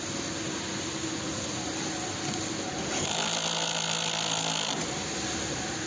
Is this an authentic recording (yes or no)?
yes